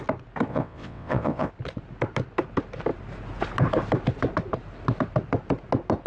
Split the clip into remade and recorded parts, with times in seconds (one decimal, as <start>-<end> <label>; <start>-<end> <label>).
0.0-0.5 recorded; 0.5-1.5 remade; 1.5-6.1 recorded